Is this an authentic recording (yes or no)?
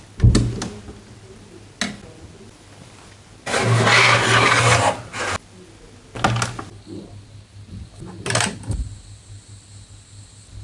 yes